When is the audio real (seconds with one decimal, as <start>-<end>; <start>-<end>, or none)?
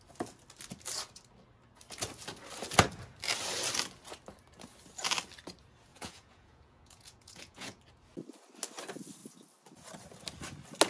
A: 0.0-5.9; 7.8-10.9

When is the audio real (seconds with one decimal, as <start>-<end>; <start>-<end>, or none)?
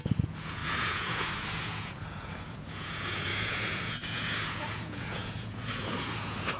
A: none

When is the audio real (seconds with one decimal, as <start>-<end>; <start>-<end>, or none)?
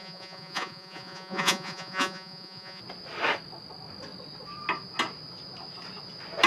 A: 2.8-6.5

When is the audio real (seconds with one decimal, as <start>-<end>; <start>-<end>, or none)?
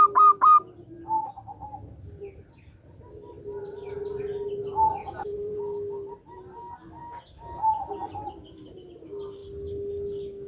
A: 0.0-5.0; 5.6-10.5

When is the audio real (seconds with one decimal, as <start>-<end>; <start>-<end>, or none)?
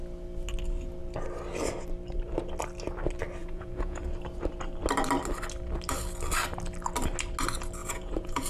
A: 0.0-3.4; 4.0-7.8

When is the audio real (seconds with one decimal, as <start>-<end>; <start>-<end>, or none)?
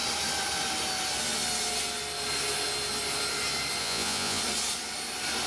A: 0.0-3.8; 4.4-5.5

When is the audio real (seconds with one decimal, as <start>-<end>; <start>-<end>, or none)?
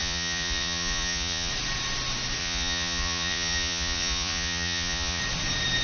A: 1.5-2.4; 5.2-5.8